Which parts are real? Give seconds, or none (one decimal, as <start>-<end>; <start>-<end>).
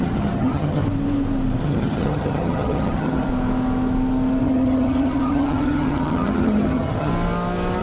0.8-1.6; 3.3-4.4; 7.1-7.8